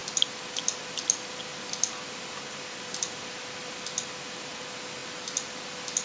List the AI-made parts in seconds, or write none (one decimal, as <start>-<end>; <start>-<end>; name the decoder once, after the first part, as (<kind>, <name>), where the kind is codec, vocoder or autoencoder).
none